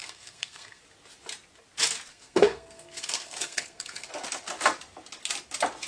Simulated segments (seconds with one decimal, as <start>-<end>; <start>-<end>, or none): 0.0-0.8; 2.1-4.1

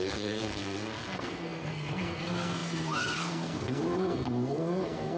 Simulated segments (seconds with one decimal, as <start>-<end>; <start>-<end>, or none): 0.0-5.2

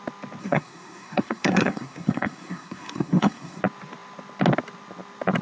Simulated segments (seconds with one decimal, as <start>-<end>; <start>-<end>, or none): 0.4-3.6

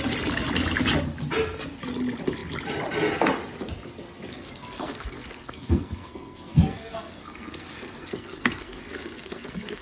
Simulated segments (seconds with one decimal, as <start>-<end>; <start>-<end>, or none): 4.3-9.8

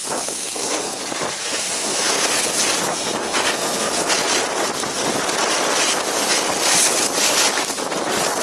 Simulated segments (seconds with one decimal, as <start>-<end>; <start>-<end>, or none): 0.0-1.0; 1.4-2.2; 2.9-4.1

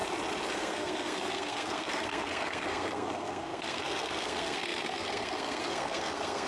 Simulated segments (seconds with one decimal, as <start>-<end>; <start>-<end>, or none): 0.5-6.5